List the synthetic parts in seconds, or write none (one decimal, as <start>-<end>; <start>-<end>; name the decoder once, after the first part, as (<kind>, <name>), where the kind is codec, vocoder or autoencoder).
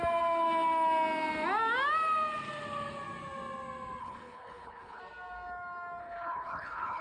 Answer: 4.0-5.0 (codec, HILCodec); 6.0-7.0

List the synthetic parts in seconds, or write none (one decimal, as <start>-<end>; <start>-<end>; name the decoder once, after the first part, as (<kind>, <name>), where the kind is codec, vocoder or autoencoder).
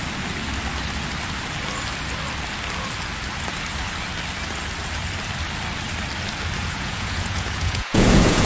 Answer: 6.6-8.5 (vocoder, Vocos)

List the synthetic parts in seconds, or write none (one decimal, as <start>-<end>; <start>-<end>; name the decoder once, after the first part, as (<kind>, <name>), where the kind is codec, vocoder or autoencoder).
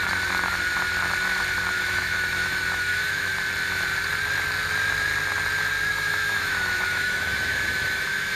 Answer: 1.7-3.3 (autoencoder, DAC-VAE); 5.9-8.4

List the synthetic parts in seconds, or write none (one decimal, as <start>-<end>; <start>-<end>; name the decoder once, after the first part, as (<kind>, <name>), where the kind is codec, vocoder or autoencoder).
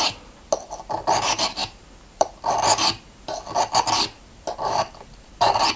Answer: 1.6-2.3 (vocoder, BigVGAN v2)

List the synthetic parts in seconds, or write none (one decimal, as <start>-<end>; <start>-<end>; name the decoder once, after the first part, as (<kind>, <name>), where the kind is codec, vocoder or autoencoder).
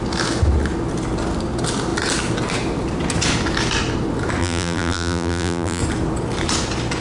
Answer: 4.4-5.8 (vocoder, BigVGAN v2)